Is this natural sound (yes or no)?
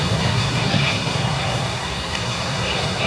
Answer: no